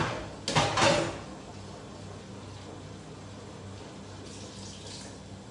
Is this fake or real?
real